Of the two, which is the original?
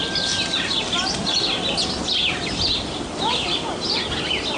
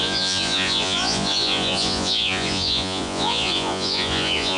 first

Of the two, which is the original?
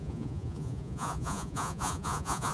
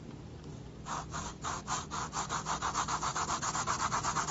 second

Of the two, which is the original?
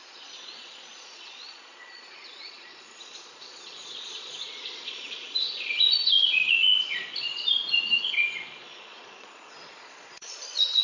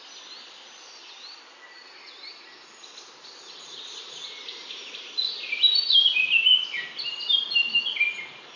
second